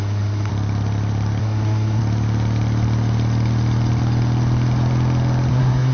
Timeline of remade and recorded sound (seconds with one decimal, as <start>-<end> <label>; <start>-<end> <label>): 0.0-0.5 remade; 0.5-1.4 recorded; 1.4-2.0 remade; 2.0-5.5 recorded; 5.5-5.9 remade